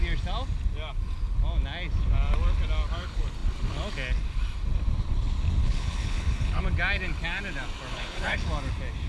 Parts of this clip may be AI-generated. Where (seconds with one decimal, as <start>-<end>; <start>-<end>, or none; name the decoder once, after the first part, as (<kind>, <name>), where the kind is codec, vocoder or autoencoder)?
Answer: 5.6-6.6 (codec, HILCodec); 7.9-8.4

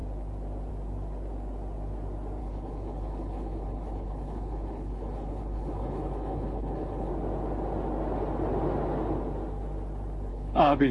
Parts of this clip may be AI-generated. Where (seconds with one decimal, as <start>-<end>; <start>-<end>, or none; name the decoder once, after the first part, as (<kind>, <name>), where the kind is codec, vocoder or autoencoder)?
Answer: 2.4-7.1 (codec, HILCodec); 10.3-10.9

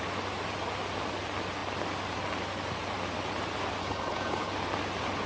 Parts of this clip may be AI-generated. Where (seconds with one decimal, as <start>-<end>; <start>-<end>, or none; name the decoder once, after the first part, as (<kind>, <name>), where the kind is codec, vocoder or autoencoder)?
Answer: 3.8-4.5 (codec, HILCodec)

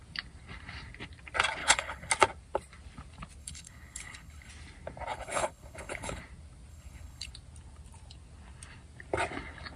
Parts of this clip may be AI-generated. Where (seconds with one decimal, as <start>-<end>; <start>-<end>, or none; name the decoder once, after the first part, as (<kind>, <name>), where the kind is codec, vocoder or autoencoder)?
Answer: 1.6-2.1 (codec, HILCodec); 3.4-4.5; 5.1-6.2; 6.7-7.3